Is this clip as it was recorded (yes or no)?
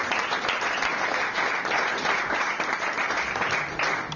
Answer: no